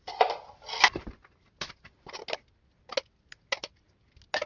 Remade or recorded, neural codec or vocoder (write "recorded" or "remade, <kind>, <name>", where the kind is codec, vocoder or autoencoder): recorded